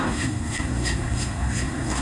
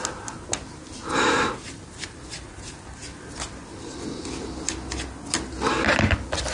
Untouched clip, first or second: second